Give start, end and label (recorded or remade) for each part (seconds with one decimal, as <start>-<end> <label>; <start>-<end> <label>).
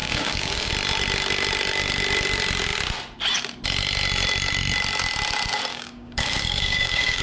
0.0-0.7 remade; 0.7-5.7 recorded; 5.7-7.2 remade